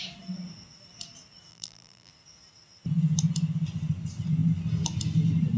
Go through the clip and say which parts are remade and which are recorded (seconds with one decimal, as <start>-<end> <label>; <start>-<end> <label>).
0.0-1.5 recorded; 1.5-2.1 remade; 2.1-5.6 recorded